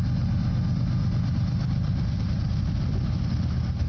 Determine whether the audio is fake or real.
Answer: real